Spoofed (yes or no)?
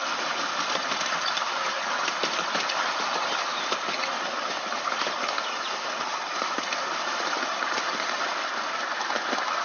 no